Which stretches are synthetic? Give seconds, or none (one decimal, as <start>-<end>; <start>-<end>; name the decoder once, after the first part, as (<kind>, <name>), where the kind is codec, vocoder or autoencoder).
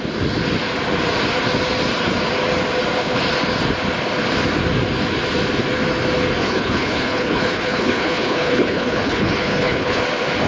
6.4-10.0 (codec, HILCodec)